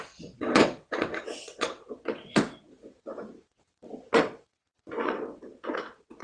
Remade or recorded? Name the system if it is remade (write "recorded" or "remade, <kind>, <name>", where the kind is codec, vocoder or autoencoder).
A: remade, vocoder, WaveNeXt